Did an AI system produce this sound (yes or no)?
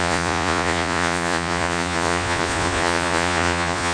yes